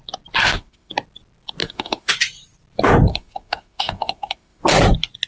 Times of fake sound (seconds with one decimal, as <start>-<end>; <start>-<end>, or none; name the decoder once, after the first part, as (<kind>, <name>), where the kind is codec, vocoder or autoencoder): 0.4-0.9 (autoencoder, DAC-VAE); 1.6-2.1; 3.1-4.6